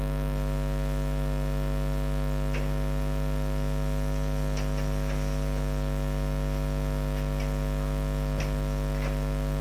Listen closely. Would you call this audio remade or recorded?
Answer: recorded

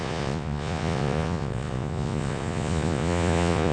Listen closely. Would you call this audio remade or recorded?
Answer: remade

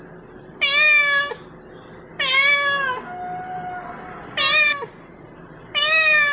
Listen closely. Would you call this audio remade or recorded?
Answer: recorded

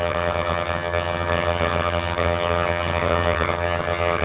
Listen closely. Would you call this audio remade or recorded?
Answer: remade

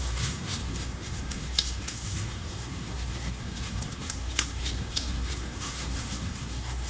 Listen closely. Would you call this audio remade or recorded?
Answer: remade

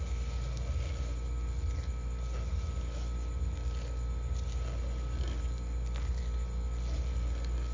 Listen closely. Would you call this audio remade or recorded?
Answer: recorded